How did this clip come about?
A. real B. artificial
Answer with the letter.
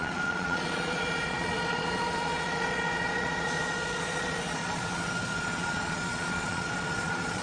B